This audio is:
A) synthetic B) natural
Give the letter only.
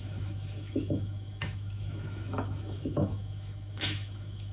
A